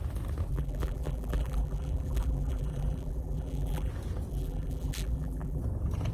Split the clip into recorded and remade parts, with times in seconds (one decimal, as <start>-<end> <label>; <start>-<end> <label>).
0.0-0.5 recorded; 0.5-3.9 remade; 3.9-4.3 recorded; 4.3-5.6 remade; 5.6-6.1 recorded